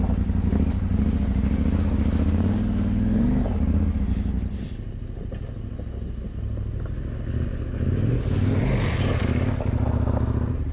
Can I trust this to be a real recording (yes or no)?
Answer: yes